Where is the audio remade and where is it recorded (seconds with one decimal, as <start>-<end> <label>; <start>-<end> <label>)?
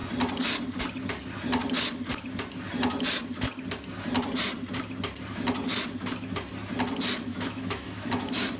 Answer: 0.0-7.3 recorded; 7.3-8.1 remade; 8.1-8.6 recorded